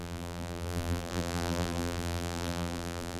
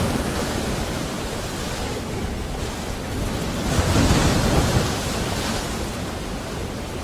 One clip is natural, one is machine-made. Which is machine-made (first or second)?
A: first